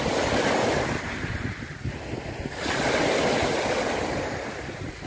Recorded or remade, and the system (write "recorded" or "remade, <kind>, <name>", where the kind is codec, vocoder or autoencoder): recorded